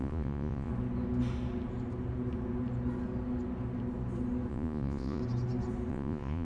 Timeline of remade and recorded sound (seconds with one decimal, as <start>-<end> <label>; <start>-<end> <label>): 0.0-0.7 remade; 0.7-4.5 recorded; 4.5-5.2 remade; 5.2-5.9 recorded; 5.9-6.4 remade